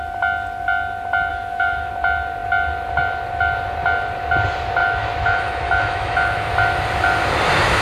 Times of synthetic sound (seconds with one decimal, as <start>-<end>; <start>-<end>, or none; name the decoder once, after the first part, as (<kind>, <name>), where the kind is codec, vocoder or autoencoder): 1.3-1.9 (autoencoder, DAC-VAE); 4.8-6.5